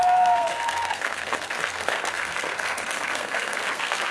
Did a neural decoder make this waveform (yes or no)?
yes